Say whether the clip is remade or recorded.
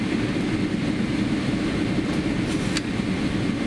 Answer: recorded